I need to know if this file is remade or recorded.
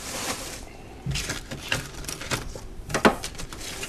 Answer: remade